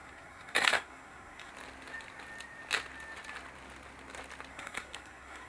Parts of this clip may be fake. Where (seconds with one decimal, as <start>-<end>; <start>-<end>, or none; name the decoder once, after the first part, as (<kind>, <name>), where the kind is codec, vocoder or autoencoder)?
0.0-1.5 (codec, SNAC); 4.5-5.5